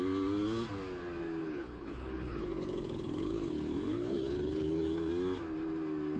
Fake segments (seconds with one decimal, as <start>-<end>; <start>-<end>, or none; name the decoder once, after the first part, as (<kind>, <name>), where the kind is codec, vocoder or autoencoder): 1.4-5.1 (codec, HILCodec)